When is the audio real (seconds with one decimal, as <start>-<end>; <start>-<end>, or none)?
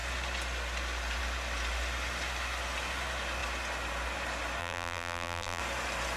0.0-4.6; 5.6-6.2